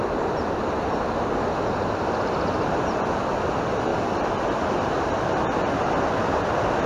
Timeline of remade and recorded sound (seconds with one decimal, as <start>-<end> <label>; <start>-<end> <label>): 0.0-6.9 recorded

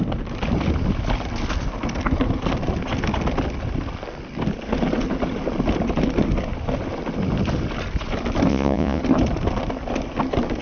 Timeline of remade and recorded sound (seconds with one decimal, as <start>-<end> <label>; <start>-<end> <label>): 0.0-8.5 recorded; 8.5-9.0 remade; 9.0-10.6 recorded

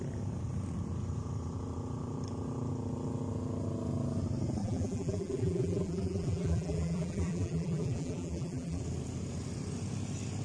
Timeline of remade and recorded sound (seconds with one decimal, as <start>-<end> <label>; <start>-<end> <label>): 0.0-4.6 recorded; 4.6-8.8 remade; 8.8-10.4 recorded

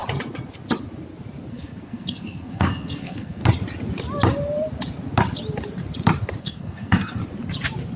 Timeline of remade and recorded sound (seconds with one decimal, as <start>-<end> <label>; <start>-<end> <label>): 0.0-1.5 recorded; 1.5-3.4 remade; 3.4-6.4 recorded; 6.4-7.2 remade; 7.2-8.0 recorded

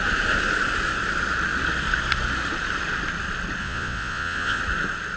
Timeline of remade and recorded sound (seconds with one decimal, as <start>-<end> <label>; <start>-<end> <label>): 0.0-3.6 recorded; 3.6-4.6 remade; 4.6-5.2 recorded

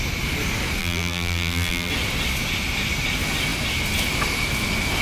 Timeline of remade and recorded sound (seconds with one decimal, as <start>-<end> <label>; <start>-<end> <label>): 0.0-0.8 recorded; 0.8-1.9 remade; 1.9-5.0 recorded

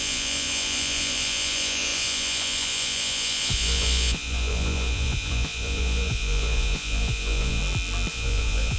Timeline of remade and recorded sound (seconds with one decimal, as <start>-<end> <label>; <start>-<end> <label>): 0.0-7.6 remade; 7.6-8.1 recorded; 8.1-8.8 remade